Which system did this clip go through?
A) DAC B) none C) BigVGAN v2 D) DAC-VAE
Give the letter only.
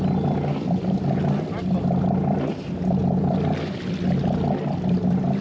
B